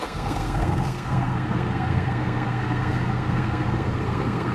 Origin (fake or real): fake